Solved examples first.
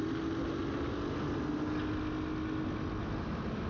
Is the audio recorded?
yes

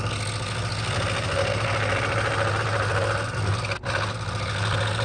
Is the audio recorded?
yes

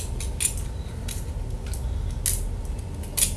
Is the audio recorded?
yes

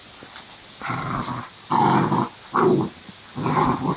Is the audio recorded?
yes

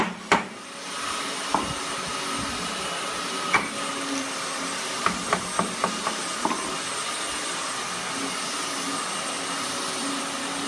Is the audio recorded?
yes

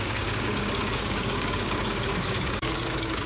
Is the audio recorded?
no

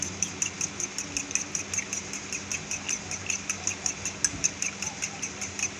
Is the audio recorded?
yes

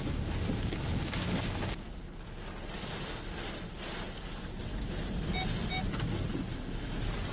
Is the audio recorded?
yes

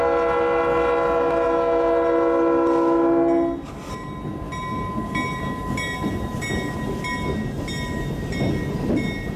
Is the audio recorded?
yes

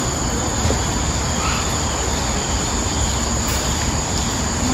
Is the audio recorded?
yes